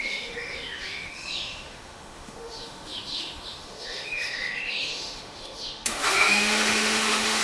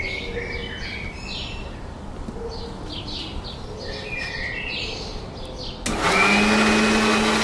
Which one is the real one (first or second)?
second